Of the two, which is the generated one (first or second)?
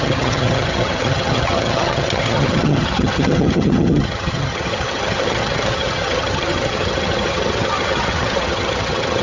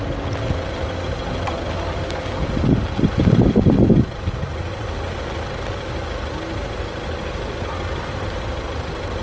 first